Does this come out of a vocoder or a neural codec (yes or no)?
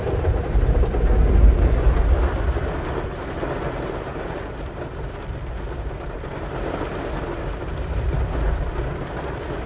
no